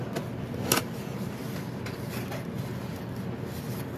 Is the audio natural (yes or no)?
yes